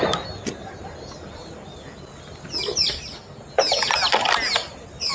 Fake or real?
real